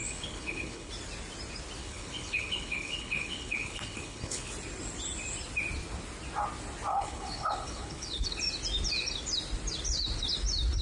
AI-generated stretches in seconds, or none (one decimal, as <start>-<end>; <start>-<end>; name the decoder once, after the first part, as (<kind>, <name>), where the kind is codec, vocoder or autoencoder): 0.0-0.9 (codec, HILCodec); 1.8-4.5; 6.9-8.4